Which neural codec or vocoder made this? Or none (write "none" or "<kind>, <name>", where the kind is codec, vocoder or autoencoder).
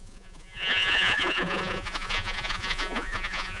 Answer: vocoder, Vocos